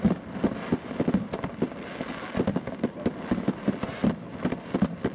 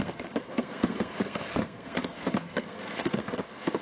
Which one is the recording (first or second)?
first